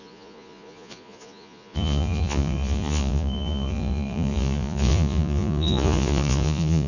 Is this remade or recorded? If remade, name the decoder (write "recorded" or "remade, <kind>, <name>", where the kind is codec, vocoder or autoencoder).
remade, vocoder, Vocos